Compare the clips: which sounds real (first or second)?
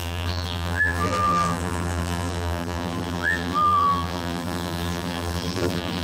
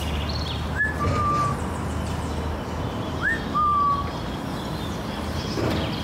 second